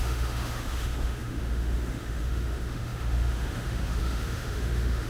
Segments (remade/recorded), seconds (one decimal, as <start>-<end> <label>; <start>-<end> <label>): 0.0-5.1 remade